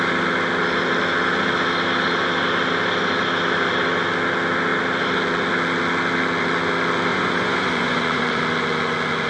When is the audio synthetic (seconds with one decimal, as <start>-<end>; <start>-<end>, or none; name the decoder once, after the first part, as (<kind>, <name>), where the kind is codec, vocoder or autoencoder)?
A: 7.1-8.4 (vocoder, Vocos)